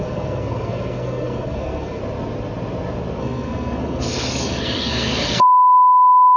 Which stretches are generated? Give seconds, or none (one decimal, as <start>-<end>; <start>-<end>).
0.0-2.0; 3.2-6.4